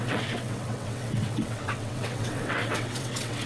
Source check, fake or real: fake